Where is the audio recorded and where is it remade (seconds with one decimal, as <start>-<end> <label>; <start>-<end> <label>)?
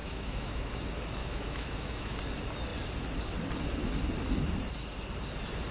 0.0-0.7 remade; 0.7-1.2 recorded; 1.2-2.2 remade; 2.2-5.7 recorded